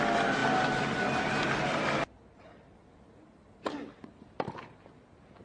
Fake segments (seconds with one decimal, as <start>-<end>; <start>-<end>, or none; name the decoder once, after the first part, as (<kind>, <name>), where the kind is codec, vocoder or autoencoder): none